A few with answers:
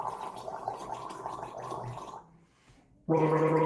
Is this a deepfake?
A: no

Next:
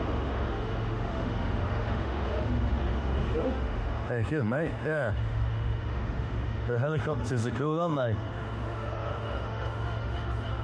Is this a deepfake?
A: yes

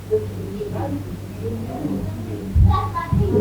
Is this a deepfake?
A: no